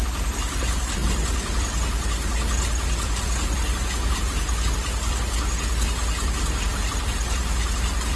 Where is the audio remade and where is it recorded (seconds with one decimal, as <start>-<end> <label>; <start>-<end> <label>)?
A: 0.0-8.2 recorded